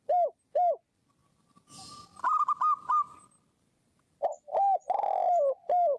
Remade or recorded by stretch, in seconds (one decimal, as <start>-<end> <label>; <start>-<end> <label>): 0.0-6.0 recorded